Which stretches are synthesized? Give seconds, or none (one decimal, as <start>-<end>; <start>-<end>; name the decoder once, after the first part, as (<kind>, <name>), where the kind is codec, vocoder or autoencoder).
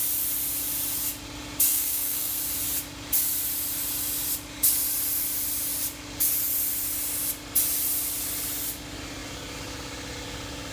1.7-2.4 (codec, SNAC)